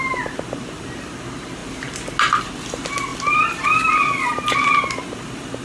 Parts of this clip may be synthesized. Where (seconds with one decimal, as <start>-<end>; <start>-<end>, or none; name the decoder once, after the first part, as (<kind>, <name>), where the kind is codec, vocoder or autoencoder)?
none